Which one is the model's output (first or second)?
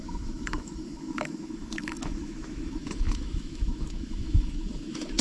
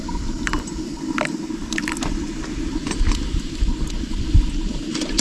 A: first